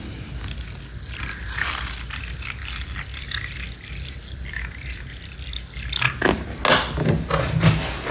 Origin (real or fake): real